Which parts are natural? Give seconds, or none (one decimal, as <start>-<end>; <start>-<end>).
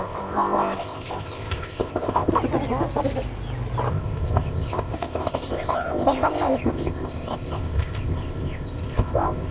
2.3-3.9